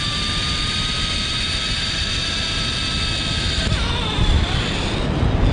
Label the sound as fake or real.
real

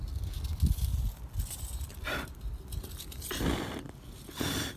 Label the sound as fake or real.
real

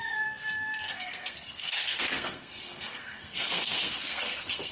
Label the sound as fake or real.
fake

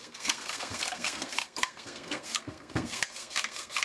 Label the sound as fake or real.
fake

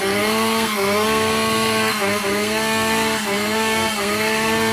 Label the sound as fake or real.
fake